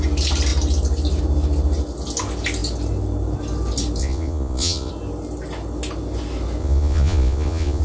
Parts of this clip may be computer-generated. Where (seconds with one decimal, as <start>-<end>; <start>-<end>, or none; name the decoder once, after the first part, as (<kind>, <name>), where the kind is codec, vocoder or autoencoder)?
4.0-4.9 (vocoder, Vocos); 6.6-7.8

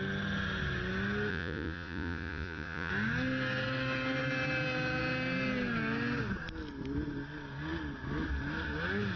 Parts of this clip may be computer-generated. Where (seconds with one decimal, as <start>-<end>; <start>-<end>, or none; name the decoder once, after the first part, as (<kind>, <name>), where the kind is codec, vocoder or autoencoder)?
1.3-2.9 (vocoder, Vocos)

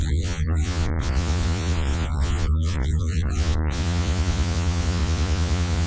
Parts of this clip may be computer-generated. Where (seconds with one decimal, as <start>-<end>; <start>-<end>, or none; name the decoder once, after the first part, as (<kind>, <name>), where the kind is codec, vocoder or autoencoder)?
0.0-5.9 (vocoder, Vocos)

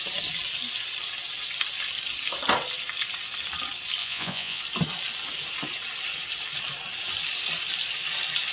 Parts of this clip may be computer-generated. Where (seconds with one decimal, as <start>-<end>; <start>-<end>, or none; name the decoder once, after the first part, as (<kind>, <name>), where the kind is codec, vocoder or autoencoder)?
4.0-4.6 (vocoder, Vocos)